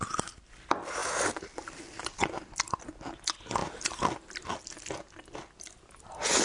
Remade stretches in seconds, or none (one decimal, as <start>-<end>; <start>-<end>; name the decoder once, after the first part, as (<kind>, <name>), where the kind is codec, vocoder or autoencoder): none